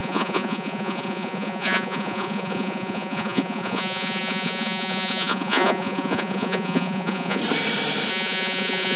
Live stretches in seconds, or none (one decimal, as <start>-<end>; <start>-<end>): 7.4-8.1